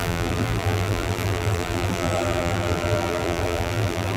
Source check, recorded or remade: remade